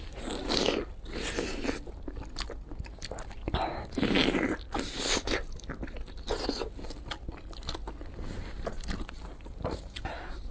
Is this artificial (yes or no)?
no